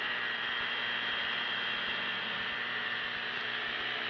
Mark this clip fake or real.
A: real